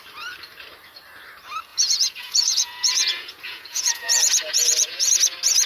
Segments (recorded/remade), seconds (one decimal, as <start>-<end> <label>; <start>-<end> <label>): 0.0-1.7 recorded; 1.7-5.1 remade; 5.1-5.7 recorded